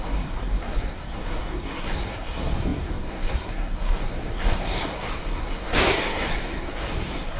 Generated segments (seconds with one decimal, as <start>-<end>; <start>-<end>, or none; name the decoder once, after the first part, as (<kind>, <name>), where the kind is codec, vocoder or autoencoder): 0.0-7.4 (codec, SNAC)